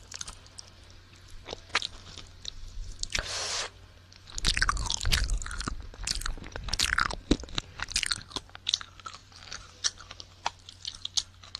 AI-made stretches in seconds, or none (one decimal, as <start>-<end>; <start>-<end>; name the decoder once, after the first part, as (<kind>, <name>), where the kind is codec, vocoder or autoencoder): 9.2-9.7 (vocoder, BigVGAN v2)